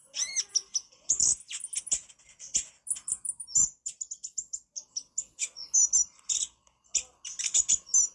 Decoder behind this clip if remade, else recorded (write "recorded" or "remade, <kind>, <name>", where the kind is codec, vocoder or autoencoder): recorded